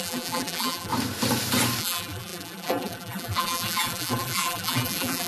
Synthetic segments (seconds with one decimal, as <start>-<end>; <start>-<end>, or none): 0.0-0.9; 1.8-5.3